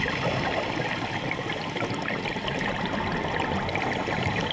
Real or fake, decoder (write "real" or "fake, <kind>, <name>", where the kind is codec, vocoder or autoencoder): real